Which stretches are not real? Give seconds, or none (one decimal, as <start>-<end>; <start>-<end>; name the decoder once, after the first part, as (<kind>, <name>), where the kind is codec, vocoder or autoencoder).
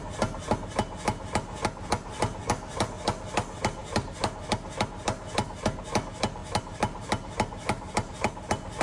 3.8-4.7 (vocoder, BigVGAN v2); 6.4-8.1